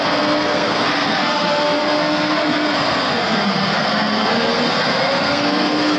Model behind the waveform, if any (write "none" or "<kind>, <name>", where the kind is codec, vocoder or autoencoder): codec, SNAC